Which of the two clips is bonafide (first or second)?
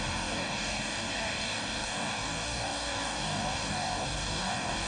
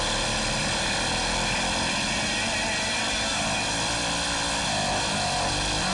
second